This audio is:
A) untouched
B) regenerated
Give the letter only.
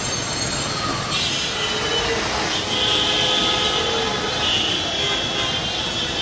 A